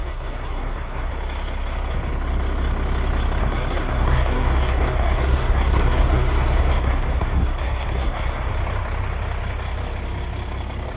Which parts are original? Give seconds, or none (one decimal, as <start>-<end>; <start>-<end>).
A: 1.1-3.4; 8.5-11.0

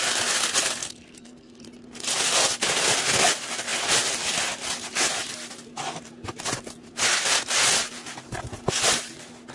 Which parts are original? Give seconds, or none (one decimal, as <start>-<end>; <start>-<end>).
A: 0.0-0.8; 1.6-9.5